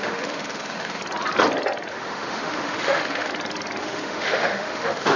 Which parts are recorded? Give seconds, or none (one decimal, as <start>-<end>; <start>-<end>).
1.0-1.9; 3.3-3.8